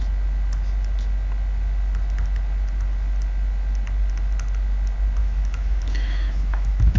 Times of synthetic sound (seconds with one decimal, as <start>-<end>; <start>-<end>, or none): 5.2-7.0